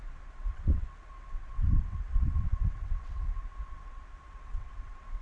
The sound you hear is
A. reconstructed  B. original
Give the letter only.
A